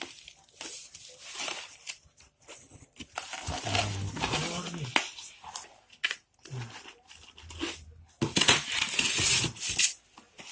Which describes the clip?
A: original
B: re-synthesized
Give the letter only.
A